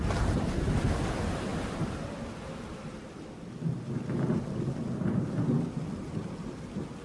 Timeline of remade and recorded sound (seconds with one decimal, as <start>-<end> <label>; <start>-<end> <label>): 0.0-1.5 recorded; 1.5-2.3 remade; 2.3-7.0 recorded